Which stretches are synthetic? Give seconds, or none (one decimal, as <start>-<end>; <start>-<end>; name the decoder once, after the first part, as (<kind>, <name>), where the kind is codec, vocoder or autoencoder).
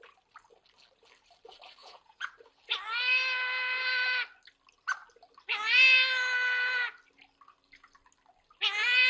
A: 1.8-2.3 (vocoder, Vocos)